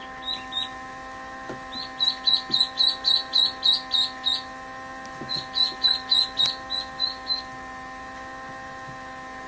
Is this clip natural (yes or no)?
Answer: yes